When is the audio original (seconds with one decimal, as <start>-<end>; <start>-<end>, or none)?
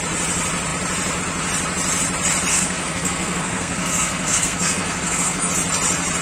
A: 0.0-2.5; 5.5-6.2